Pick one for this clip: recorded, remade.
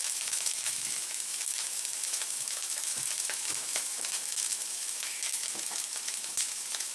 remade